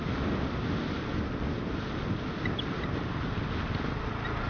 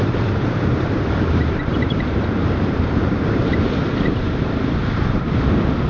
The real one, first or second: first